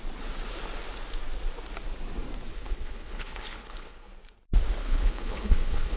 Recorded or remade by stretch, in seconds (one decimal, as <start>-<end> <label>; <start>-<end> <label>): 0.0-2.5 recorded; 2.5-4.1 remade; 4.1-4.8 recorded; 4.8-6.0 remade